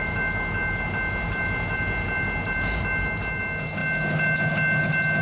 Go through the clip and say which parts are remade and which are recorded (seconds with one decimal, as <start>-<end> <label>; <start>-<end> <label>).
0.0-5.2 recorded